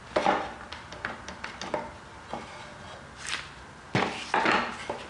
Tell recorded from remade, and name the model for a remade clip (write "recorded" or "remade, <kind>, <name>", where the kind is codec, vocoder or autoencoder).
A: recorded